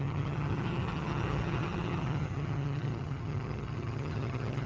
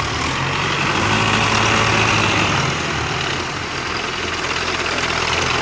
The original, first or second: second